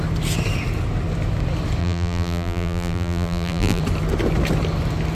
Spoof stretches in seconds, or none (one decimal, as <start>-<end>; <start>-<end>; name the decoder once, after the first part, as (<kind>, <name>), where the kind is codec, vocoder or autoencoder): 1.8-3.8 (vocoder, BigVGAN v2)